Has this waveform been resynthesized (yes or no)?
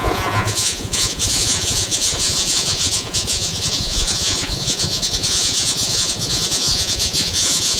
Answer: yes